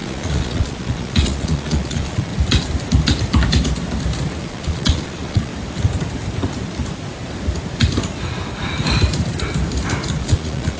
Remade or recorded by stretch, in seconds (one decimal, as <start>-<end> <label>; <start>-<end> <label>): 0.0-2.3 remade; 2.3-4.4 recorded; 4.4-5.5 remade; 5.5-10.2 recorded; 10.2-10.8 remade